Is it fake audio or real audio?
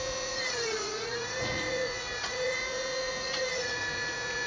fake